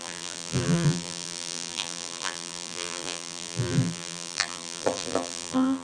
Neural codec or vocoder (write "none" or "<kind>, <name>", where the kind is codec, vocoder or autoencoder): vocoder, BigVGAN v2